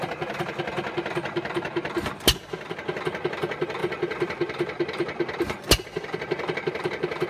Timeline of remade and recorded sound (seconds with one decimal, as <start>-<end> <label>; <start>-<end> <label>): 0.0-7.3 recorded